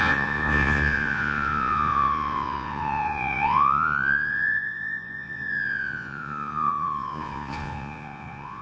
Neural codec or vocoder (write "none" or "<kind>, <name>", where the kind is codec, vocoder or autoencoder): vocoder, Vocos